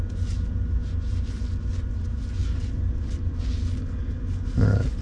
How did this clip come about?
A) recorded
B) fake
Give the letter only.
A